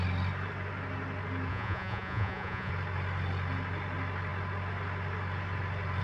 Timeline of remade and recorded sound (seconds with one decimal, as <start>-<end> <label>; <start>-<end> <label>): 0.0-1.5 recorded; 1.5-2.7 remade; 2.7-6.0 recorded